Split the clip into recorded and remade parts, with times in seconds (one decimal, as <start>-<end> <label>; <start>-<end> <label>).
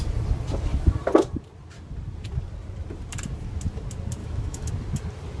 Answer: 0.0-4.2 recorded; 4.2-4.7 remade; 4.7-5.4 recorded